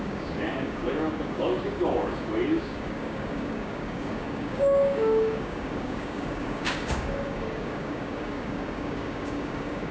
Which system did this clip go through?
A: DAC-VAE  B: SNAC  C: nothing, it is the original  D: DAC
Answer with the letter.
D